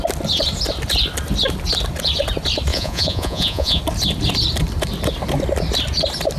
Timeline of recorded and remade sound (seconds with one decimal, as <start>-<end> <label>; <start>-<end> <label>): 0.0-2.7 recorded; 2.7-3.8 remade; 3.8-6.4 recorded